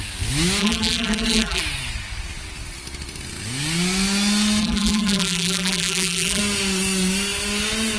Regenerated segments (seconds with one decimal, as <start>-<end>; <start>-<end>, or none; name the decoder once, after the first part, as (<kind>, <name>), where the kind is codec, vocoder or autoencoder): 0.6-1.6 (vocoder, BigVGAN v2); 4.6-6.4